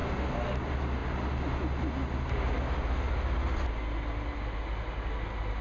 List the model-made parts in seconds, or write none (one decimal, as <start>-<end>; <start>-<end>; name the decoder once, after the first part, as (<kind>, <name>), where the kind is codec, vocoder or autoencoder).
none